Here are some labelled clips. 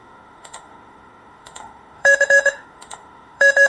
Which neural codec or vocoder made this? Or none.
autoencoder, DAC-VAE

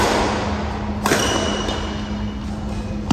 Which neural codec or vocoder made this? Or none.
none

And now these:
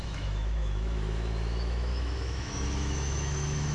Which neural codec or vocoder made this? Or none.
autoencoder, DAC-VAE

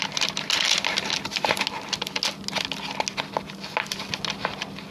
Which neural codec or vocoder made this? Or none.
none